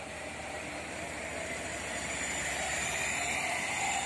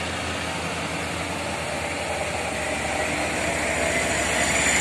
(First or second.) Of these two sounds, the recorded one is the second